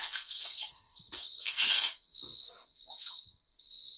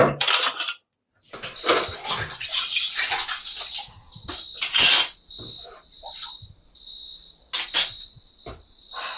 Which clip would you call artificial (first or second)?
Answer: first